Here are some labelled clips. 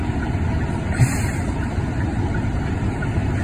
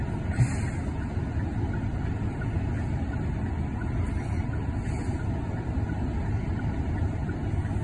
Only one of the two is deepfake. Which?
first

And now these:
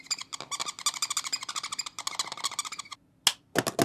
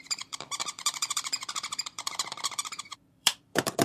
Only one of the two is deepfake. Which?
second